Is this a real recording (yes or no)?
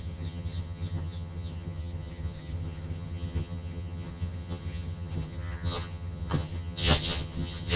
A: no